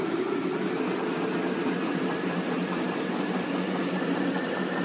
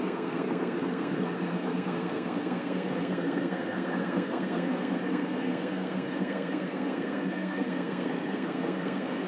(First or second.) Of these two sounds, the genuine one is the first